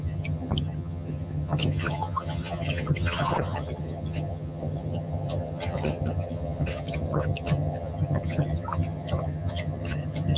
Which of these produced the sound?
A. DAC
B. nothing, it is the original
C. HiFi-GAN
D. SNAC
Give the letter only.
C